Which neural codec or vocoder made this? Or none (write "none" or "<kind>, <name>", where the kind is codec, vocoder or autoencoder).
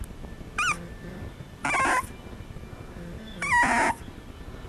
none